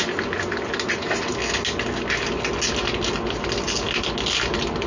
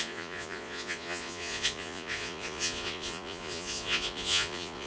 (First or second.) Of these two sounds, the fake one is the second